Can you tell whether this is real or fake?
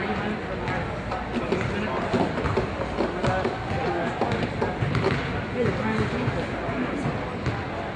real